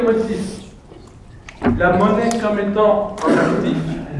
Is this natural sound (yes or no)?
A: yes